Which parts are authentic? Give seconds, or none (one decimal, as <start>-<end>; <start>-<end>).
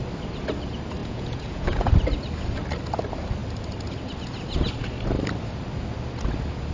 0.0-1.0; 1.9-6.7